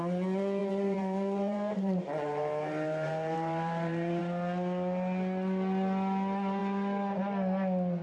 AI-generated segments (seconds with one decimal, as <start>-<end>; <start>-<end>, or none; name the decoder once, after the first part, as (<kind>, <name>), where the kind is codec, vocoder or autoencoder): 0.6-4.2 (vocoder, BigVGAN v2)